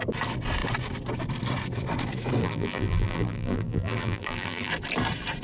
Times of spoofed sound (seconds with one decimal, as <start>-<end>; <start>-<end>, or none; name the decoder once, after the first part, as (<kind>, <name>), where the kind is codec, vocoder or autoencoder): 2.4-4.7 (vocoder, BigVGAN v2)